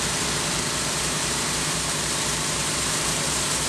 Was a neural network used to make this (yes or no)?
yes